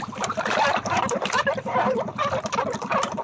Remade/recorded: remade